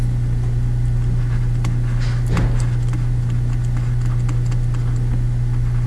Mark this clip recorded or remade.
recorded